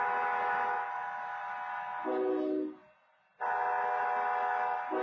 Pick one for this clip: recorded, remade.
recorded